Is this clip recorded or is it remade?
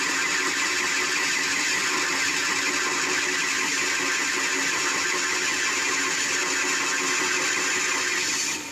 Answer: recorded